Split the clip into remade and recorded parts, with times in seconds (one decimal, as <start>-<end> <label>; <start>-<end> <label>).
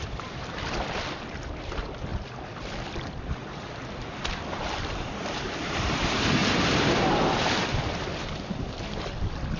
0.0-2.1 remade; 2.1-2.7 recorded; 2.7-9.6 remade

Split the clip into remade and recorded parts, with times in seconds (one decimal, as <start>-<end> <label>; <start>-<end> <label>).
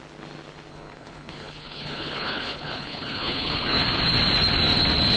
0.0-0.7 recorded; 0.7-3.8 remade; 3.8-5.2 recorded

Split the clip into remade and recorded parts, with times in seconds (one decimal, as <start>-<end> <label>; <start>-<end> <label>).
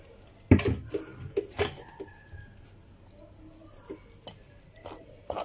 0.0-5.4 recorded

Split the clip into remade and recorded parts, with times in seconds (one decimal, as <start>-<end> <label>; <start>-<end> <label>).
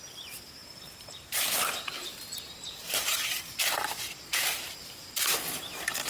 0.0-0.6 recorded; 0.6-3.6 remade; 3.6-4.3 recorded; 4.3-4.8 remade; 4.8-6.1 recorded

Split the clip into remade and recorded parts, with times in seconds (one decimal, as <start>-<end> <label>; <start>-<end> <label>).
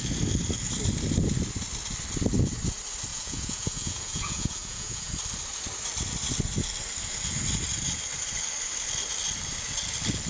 0.0-3.1 recorded; 3.1-5.1 remade; 5.1-10.3 recorded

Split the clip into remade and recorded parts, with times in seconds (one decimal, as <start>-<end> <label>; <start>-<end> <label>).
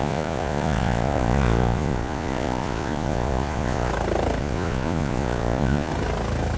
0.0-3.9 remade; 3.9-4.4 recorded; 4.4-5.9 remade; 5.9-6.6 recorded